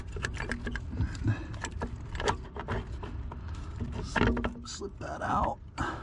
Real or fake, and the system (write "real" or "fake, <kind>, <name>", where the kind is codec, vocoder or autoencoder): real